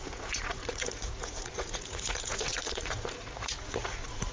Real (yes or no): no